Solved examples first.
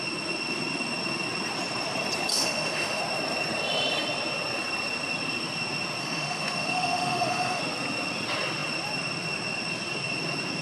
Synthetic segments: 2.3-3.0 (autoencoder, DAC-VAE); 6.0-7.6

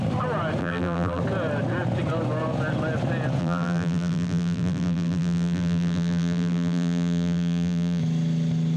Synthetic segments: 0.6-1.2 (vocoder, BigVGAN v2); 3.4-8.0

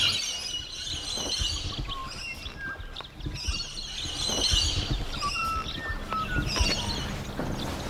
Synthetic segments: none

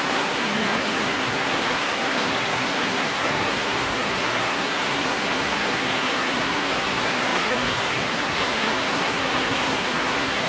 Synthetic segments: 0.0-10.5 (codec, SNAC)